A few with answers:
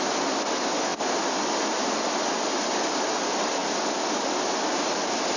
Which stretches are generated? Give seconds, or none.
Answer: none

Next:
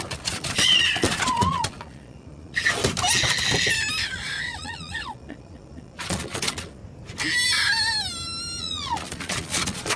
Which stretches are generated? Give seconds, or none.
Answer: 0.0-2.8 (vocoder, Vocos); 4.0-6.8; 8.6-10.0

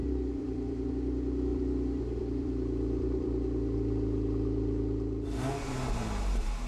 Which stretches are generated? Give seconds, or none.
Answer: 0.0-0.9 (vocoder, BigVGAN v2); 1.5-5.5

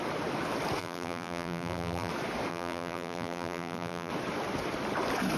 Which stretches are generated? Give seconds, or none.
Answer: 0.8-2.1 (vocoder, BigVGAN v2); 2.5-4.1